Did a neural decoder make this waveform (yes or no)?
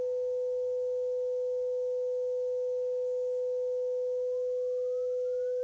no